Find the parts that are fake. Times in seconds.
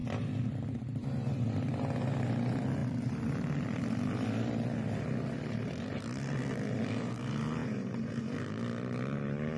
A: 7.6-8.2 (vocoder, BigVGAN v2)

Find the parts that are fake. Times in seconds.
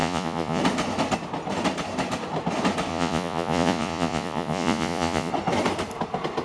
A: 0.0-0.6 (vocoder, Vocos); 2.9-5.3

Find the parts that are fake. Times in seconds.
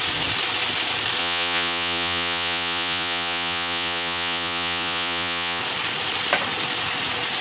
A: 1.2-5.6 (vocoder, Vocos)